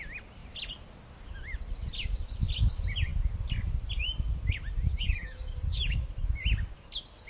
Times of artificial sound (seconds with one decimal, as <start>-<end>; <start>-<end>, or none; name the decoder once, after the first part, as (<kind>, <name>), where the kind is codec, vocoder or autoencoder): 4.9-6.4 (autoencoder, DAC-VAE)